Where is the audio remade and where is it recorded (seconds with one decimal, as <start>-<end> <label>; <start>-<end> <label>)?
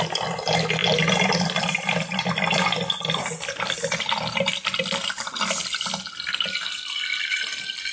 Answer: 0.0-7.9 recorded